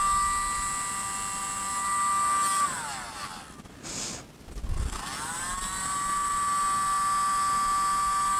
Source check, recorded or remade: recorded